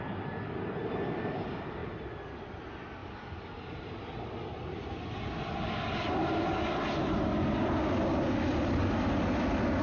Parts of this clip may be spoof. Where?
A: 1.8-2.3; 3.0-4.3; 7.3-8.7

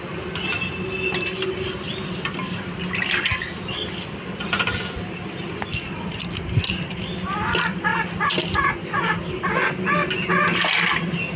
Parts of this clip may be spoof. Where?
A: none

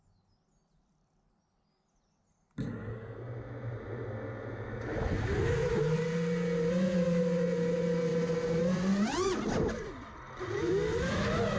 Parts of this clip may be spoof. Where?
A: 8.1-11.1

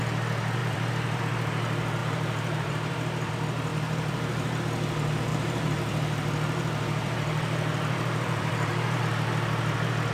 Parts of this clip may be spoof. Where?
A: 0.6-1.2; 2.0-3.3; 3.7-4.6; 5.3-9.0

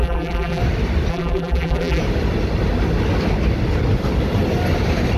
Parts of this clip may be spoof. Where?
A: 0.0-0.6; 1.1-2.0

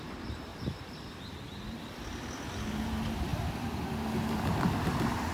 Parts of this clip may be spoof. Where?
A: 0.0-5.3

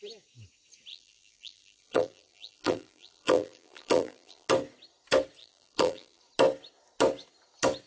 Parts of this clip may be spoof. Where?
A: 0.9-4.5; 5.4-6.2

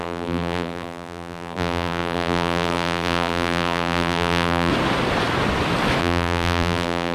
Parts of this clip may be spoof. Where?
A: 0.0-4.7; 6.0-7.1